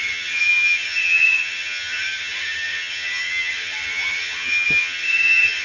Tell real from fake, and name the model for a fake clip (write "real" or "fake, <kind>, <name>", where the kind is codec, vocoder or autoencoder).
fake, vocoder, HiFi-GAN